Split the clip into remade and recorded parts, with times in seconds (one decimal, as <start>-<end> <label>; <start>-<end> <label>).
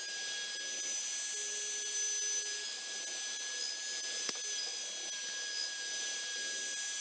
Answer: 0.0-7.0 recorded